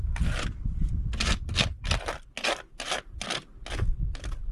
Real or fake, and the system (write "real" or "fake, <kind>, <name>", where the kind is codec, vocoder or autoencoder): real